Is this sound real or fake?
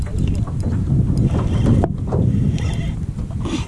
real